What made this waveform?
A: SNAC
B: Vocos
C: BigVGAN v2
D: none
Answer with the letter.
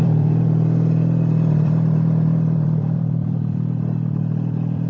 C